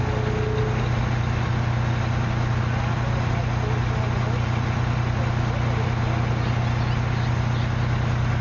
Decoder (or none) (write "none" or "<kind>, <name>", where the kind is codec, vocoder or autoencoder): none